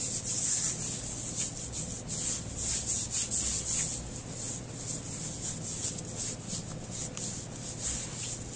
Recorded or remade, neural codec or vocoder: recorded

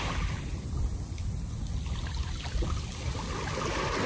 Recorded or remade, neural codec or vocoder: recorded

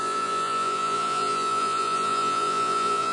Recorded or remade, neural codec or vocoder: remade, vocoder, Vocos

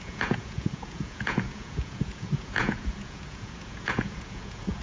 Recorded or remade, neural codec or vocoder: remade, vocoder, Vocos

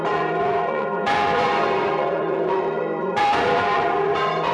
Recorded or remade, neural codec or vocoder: remade, vocoder, Vocos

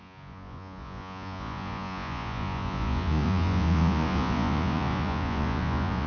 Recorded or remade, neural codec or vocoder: remade, vocoder, Vocos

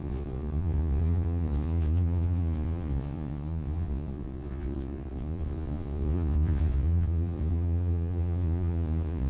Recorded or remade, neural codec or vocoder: remade, vocoder, Vocos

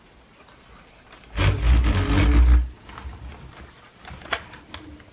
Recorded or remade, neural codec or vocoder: recorded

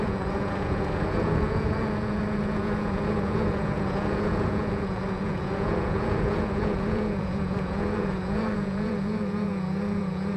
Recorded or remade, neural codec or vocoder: remade, vocoder, Vocos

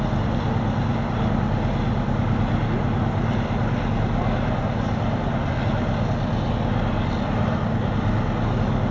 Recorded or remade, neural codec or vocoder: recorded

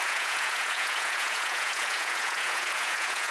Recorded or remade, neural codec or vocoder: remade, vocoder, Vocos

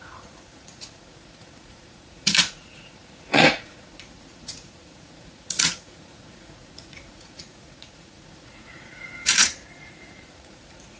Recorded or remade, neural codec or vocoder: remade, vocoder, Vocos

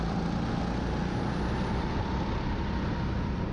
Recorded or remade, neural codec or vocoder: recorded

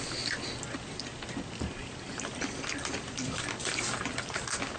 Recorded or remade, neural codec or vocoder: recorded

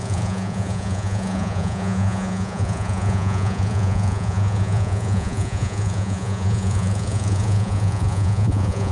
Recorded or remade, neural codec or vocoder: remade, vocoder, Vocos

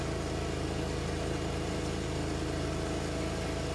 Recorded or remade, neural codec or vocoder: recorded